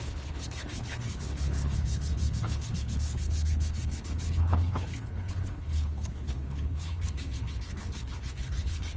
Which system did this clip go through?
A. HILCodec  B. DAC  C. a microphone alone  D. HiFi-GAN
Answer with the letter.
A